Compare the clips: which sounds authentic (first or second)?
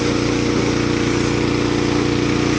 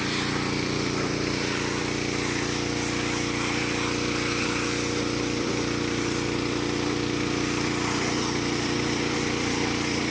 first